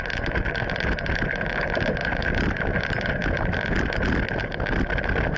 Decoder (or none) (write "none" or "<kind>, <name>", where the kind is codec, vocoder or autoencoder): none